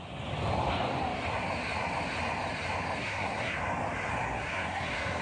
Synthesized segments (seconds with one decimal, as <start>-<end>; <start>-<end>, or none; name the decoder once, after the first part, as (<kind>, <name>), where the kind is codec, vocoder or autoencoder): 3.0-3.6 (codec, SNAC); 4.1-5.2